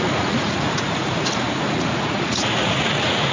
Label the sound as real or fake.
fake